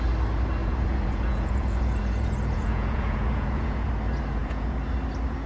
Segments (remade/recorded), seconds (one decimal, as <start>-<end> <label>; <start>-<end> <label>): 0.0-0.6 recorded; 0.6-3.9 remade; 3.9-4.4 recorded; 4.4-4.9 remade; 4.9-5.5 recorded